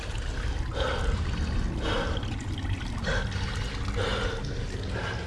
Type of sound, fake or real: real